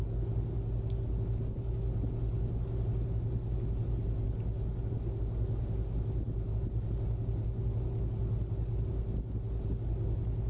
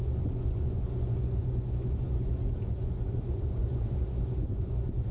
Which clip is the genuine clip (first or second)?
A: first